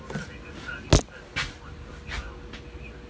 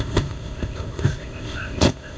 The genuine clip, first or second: first